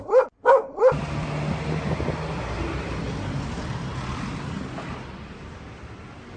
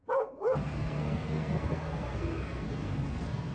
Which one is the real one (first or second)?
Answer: first